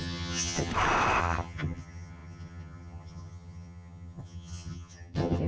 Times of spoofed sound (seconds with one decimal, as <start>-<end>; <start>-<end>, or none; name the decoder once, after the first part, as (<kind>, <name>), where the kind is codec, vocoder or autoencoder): 0.0-0.7 (vocoder, HiFi-GAN); 1.2-5.5